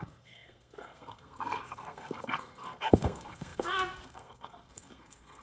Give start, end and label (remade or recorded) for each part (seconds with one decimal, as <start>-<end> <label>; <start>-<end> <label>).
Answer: 0.0-5.4 remade